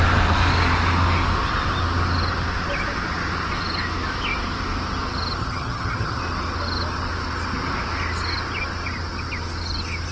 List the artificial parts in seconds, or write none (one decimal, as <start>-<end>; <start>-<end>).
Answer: 5.4-6.2